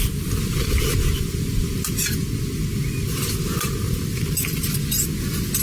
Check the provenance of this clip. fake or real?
real